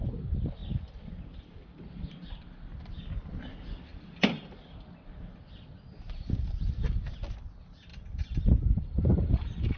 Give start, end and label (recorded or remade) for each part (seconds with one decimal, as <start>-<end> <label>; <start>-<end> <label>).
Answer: 0.0-3.9 recorded; 3.9-4.6 remade; 4.6-7.9 recorded; 7.9-9.8 remade